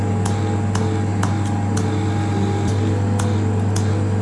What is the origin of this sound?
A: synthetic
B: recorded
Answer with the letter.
B